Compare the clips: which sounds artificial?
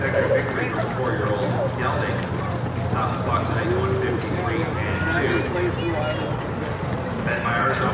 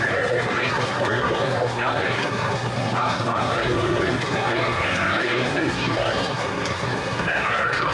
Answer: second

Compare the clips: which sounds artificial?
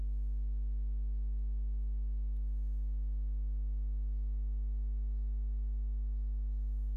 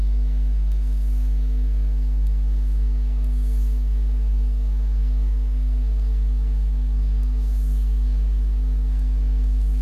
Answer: second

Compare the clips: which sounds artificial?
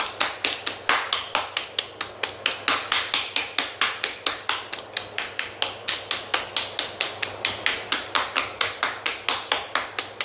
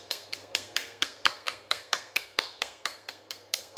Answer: second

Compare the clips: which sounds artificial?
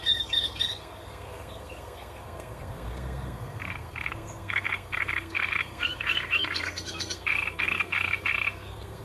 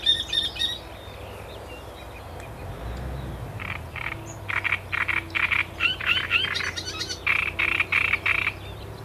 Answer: first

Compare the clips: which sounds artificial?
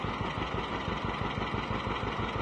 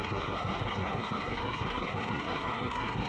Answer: second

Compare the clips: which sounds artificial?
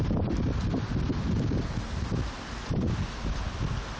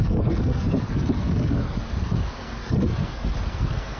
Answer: second